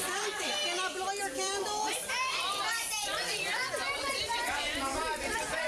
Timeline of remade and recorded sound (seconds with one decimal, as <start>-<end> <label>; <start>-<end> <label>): 0.0-0.6 remade; 0.6-1.2 recorded; 1.2-5.7 remade